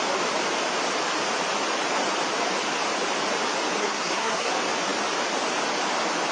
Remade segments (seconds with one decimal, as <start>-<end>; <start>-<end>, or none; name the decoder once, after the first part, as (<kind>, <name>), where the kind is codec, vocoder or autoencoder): 3.8-4.5 (codec, SNAC)